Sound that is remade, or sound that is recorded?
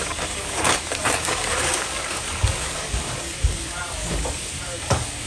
remade